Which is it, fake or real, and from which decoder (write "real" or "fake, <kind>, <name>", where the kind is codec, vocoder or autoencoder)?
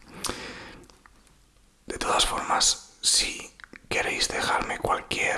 real